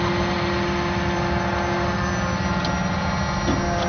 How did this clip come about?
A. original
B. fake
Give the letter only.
A